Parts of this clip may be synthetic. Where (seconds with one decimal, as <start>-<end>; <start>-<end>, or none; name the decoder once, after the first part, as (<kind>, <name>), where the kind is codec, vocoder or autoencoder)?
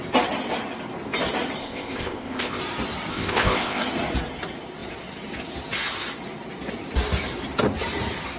1.6-2.6 (codec, ZipCodec); 3.1-3.8